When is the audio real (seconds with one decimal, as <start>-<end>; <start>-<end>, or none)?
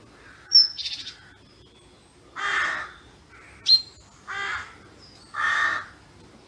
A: 0.0-6.5